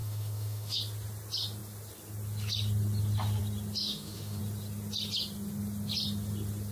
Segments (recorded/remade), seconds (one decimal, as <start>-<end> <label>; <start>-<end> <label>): 0.0-0.8 remade; 0.8-3.8 recorded; 3.8-4.4 remade; 4.4-6.7 recorded